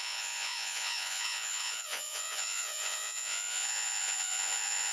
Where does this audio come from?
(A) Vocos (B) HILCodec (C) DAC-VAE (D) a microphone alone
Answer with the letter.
A